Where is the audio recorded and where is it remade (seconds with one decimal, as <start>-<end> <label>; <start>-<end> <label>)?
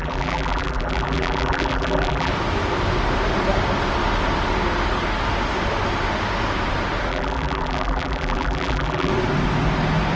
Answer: 0.0-2.3 remade; 2.3-7.1 recorded; 7.1-9.1 remade; 9.1-10.2 recorded